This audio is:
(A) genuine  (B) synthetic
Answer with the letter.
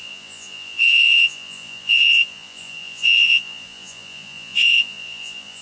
B